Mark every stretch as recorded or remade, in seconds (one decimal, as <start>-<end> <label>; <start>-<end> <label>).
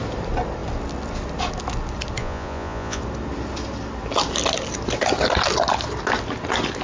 0.0-2.2 recorded; 2.2-3.0 remade; 3.0-6.8 recorded